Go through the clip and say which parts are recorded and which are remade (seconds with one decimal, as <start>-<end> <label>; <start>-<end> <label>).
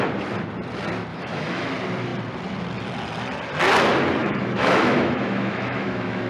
0.0-1.1 recorded; 1.1-1.7 remade; 1.7-4.2 recorded; 4.2-6.3 remade